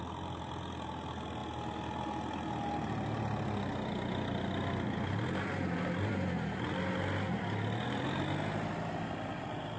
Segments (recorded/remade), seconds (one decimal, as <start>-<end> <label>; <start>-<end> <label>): 0.0-9.8 recorded